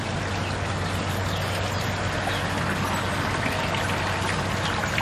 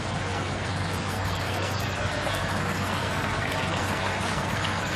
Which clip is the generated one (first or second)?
second